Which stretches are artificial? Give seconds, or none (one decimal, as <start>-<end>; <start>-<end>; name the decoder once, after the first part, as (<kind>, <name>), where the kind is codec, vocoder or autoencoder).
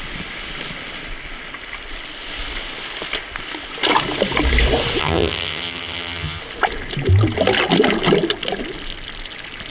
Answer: 5.0-6.4 (vocoder, HiFi-GAN)